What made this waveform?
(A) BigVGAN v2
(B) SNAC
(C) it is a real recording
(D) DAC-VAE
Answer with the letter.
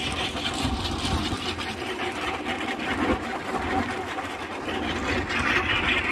C